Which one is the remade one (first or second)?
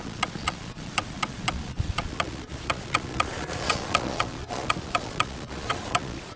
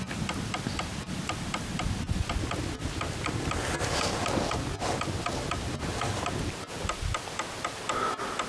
first